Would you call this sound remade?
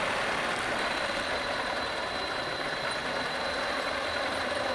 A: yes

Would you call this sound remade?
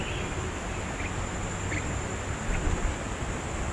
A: no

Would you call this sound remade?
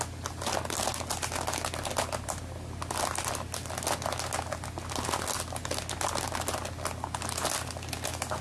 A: no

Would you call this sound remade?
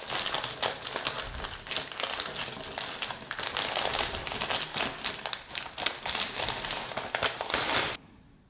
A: no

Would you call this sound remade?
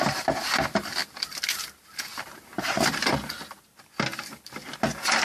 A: no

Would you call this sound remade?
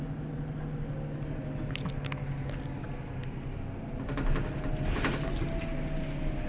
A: no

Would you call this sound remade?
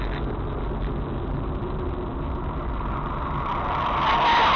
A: no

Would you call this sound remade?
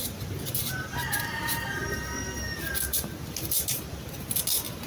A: no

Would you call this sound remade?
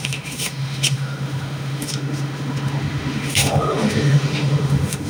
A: yes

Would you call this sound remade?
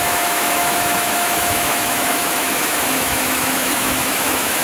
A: yes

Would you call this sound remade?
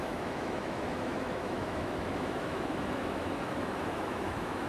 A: yes